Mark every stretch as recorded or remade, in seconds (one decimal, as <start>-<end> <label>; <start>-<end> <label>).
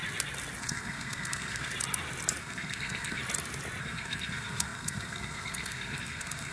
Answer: 0.0-0.6 recorded; 0.6-1.7 remade; 1.7-2.4 recorded; 2.4-3.2 remade; 3.2-3.8 recorded; 3.8-6.5 remade